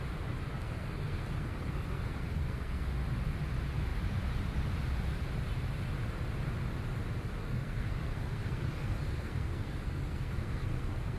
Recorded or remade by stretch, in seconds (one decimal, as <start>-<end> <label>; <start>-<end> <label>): 0.0-0.5 recorded; 0.5-2.9 remade; 2.9-7.4 recorded; 7.4-11.2 remade